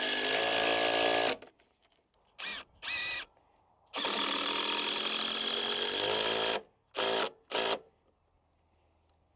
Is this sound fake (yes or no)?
no